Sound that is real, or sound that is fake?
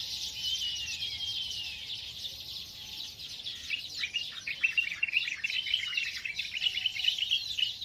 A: real